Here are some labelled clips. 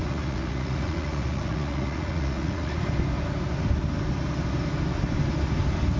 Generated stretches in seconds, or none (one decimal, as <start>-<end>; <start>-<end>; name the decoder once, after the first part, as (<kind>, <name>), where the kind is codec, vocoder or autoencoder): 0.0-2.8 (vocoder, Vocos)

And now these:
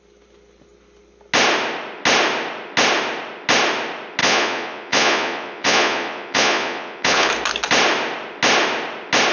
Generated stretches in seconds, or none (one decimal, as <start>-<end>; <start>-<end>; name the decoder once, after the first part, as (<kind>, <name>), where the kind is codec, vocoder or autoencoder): 4.2-7.3 (vocoder, Vocos)

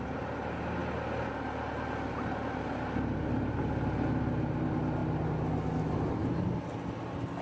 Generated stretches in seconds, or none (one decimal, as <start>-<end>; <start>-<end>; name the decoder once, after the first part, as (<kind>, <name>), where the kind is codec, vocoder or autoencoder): none

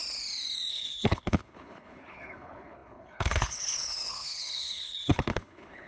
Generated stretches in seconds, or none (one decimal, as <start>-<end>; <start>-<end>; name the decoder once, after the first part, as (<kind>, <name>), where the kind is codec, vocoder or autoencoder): 0.7-5.9 (codec, HILCodec)

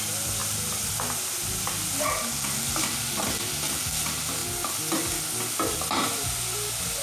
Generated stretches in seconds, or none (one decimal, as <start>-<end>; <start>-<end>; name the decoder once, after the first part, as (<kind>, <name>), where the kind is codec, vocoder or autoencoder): none

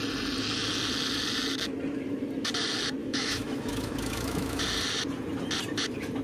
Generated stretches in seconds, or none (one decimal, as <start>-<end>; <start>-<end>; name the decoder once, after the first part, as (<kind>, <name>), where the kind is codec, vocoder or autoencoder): 3.0-4.6 (autoencoder, DAC-VAE)